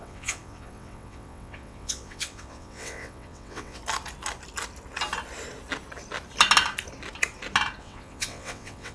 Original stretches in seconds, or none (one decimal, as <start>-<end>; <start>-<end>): 3.8-7.8